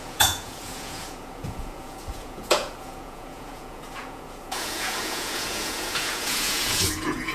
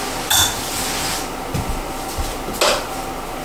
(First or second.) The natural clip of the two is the second